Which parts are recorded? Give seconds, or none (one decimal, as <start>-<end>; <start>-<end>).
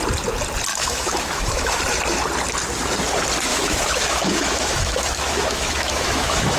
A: 0.0-0.7; 1.8-3.5